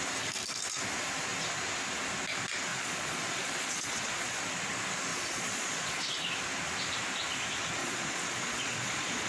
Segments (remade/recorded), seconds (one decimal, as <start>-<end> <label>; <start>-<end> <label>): 0.0-2.7 recorded; 2.7-4.4 remade; 4.4-5.1 recorded; 5.1-6.0 remade; 6.0-7.8 recorded; 7.8-9.3 remade